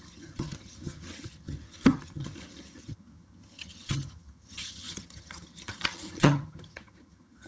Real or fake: fake